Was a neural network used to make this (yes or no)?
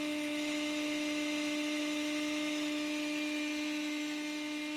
no